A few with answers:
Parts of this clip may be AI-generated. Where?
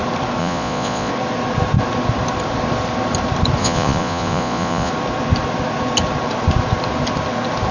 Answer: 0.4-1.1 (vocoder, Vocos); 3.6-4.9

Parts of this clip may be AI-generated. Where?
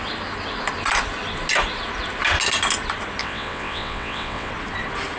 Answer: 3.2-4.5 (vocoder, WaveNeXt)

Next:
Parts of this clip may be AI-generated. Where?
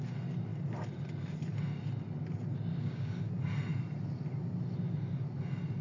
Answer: 2.7-3.3 (codec, DAC)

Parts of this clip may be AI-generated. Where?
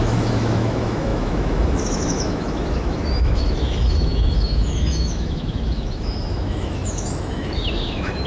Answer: 0.0-8.3 (autoencoder, DAC-VAE)